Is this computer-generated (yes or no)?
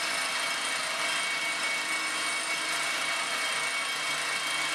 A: no